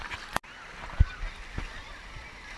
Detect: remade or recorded recorded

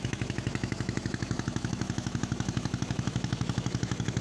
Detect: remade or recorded remade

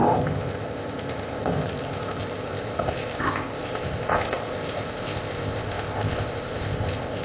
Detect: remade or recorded remade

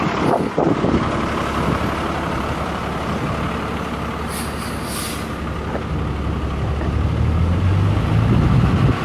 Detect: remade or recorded recorded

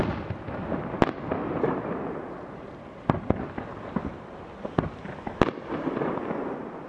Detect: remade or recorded recorded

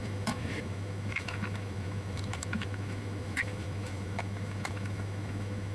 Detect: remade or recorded remade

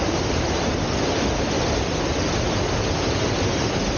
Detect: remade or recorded recorded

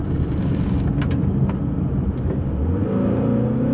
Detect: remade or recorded recorded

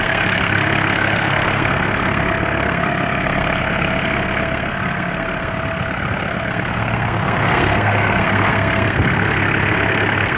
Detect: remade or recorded remade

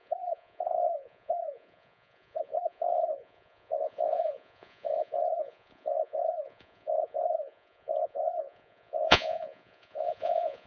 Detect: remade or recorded remade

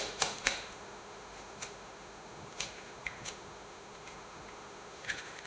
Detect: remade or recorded remade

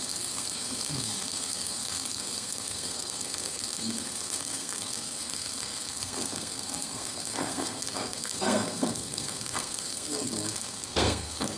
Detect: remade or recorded remade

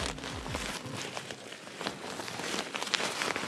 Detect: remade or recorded remade